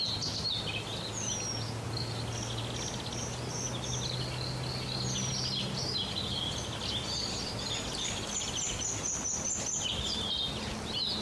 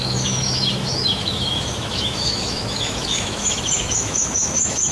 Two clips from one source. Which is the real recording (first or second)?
first